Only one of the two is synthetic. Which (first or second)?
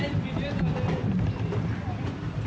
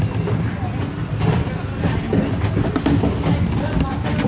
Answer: first